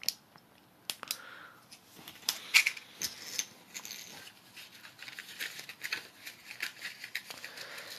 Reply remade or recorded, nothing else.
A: recorded